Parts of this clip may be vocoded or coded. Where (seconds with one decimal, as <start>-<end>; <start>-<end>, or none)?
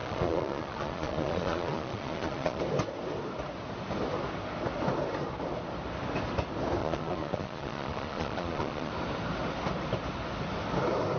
0.0-2.6; 6.8-8.9